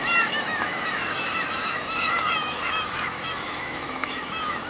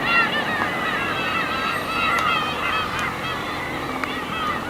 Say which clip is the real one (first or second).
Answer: second